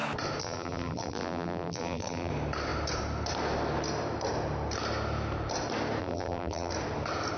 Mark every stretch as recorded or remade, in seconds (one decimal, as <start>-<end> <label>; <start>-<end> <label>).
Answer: 0.0-0.4 recorded; 0.4-2.3 remade; 2.3-6.0 recorded; 6.0-6.7 remade; 6.7-7.4 recorded